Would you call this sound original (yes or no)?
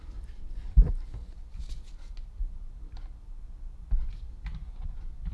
yes